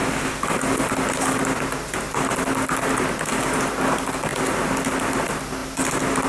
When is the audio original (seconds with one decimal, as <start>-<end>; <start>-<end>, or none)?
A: 0.0-6.3